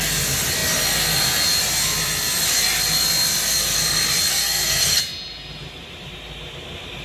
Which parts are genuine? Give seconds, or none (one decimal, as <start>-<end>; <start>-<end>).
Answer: 0.0-4.3; 5.0-7.0